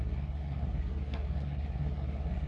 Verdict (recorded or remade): remade